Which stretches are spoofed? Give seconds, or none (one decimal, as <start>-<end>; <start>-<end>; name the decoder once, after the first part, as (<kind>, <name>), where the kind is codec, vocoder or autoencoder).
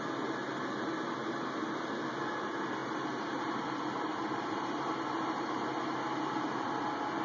2.8-3.6 (vocoder, BigVGAN v2); 4.1-6.7